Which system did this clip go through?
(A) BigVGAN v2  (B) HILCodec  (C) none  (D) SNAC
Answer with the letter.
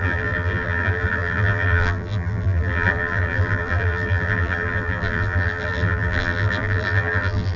A